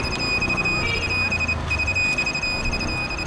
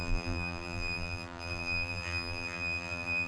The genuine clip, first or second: first